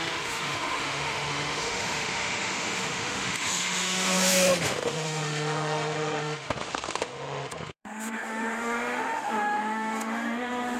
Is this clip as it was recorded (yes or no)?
no